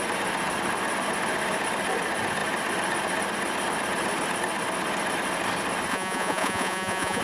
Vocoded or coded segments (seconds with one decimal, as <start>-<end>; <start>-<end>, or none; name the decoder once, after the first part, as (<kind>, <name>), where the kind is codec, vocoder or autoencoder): 5.9-7.2 (vocoder, Vocos)

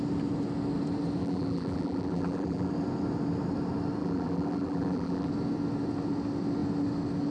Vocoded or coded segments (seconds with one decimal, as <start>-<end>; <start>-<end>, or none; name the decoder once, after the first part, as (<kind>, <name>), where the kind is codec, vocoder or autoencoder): 1.2-2.7 (vocoder, BigVGAN v2); 4.0-5.3

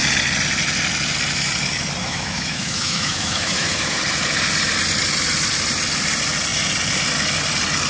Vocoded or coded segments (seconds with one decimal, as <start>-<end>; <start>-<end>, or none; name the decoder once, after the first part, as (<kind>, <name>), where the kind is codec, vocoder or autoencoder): 2.0-4.0 (autoencoder, DAC-VAE)

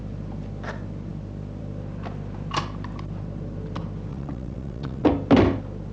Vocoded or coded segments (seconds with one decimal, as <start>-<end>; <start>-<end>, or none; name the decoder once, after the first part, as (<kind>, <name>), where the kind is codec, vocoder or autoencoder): 4.1-5.1 (vocoder, WaveNeXt)